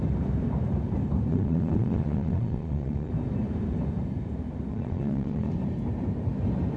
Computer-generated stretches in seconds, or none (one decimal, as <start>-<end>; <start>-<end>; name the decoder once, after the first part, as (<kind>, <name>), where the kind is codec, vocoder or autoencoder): 1.3-3.1 (vocoder, Vocos); 4.7-5.5